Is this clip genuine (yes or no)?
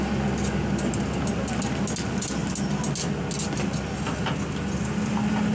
yes